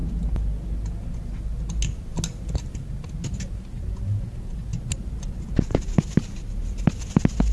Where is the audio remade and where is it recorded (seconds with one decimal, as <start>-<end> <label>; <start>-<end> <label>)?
0.0-4.7 recorded; 4.7-5.4 remade; 5.4-7.5 recorded